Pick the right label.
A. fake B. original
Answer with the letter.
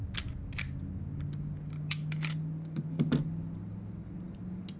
B